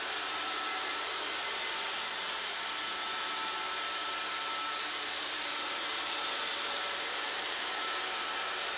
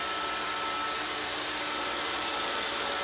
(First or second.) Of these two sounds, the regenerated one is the first